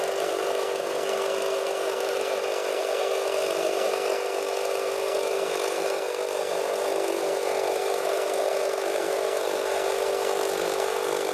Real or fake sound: fake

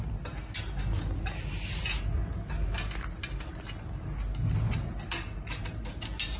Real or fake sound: real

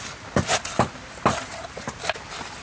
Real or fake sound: real